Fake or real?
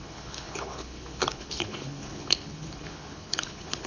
fake